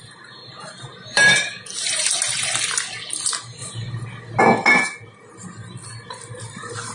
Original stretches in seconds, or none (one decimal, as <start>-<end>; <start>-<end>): 0.0-0.9; 2.1-6.9